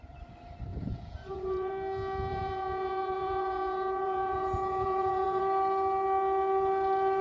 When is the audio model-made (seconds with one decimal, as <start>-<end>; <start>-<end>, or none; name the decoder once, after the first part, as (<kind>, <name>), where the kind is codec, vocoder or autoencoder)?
0.7-1.7 (vocoder, Vocos); 2.3-5.4